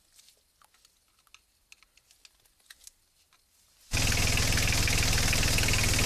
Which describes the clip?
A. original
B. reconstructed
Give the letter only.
A